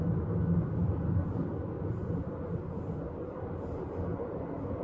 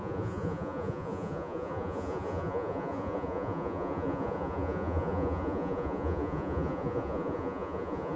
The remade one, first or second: second